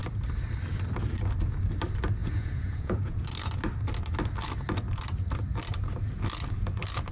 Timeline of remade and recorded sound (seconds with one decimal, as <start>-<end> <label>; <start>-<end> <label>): 0.0-2.2 recorded; 2.2-3.3 remade; 3.3-7.1 recorded